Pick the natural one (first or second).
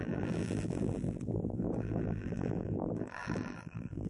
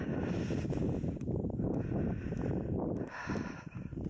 second